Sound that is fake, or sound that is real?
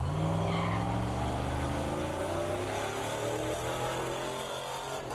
real